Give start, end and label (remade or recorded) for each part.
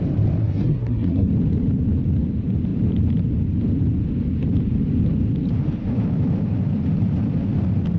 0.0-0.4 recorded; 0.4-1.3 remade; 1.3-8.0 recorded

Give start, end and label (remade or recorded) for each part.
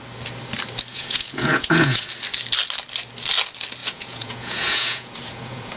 0.0-0.9 recorded; 0.9-2.1 remade; 2.1-3.8 recorded; 3.8-5.8 remade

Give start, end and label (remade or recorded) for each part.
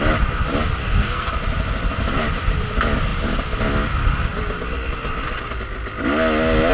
0.0-0.8 recorded; 0.8-1.3 remade; 1.3-6.7 recorded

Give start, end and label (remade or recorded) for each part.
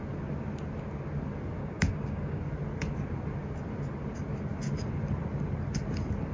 0.0-1.6 recorded; 1.6-2.4 remade; 2.4-6.3 recorded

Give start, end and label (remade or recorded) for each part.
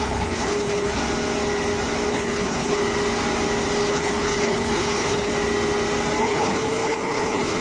0.0-1.0 remade; 1.0-2.1 recorded; 2.1-2.8 remade; 2.8-3.9 recorded; 3.9-5.3 remade; 5.3-6.2 recorded; 6.2-7.6 remade